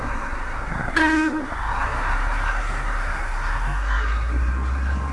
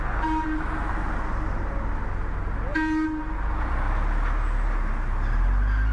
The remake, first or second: first